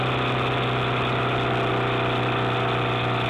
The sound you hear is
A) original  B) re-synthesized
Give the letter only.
A